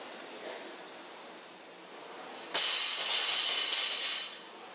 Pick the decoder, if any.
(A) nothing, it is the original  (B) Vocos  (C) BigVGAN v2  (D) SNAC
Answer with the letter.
A